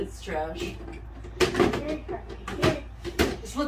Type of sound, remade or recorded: recorded